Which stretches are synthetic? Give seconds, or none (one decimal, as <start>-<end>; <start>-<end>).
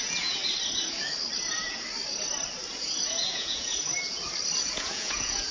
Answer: 0.0-0.4; 2.8-3.9; 4.6-5.5